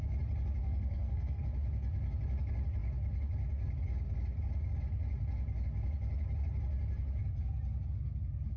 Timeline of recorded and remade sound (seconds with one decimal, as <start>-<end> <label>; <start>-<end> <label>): 0.0-0.6 recorded; 0.6-1.4 remade; 1.4-8.6 recorded